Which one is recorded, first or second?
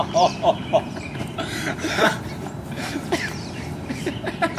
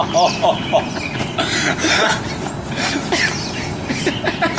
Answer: second